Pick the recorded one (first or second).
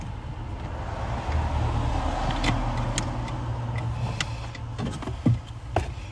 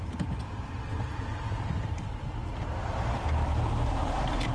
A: first